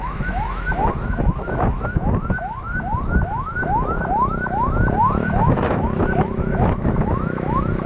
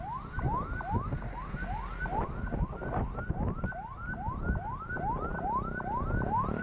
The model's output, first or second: first